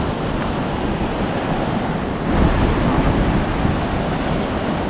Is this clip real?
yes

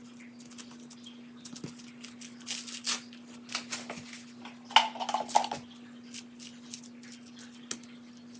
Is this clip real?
yes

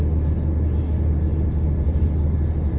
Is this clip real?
yes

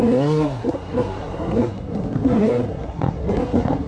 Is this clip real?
no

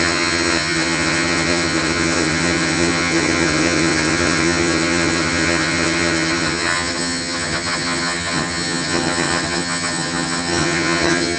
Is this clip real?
no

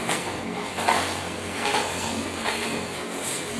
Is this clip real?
no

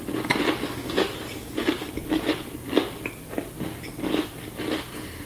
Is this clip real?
yes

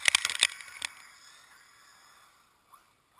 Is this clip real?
yes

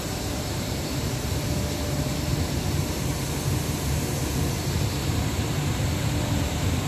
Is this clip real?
no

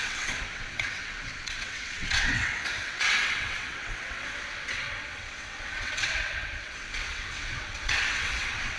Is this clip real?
no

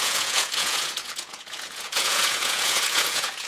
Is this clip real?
no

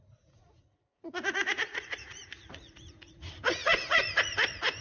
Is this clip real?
no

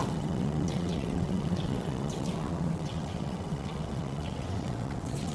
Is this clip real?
no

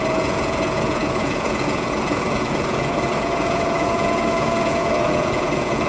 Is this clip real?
no